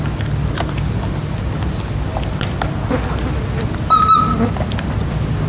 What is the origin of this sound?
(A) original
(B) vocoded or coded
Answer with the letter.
A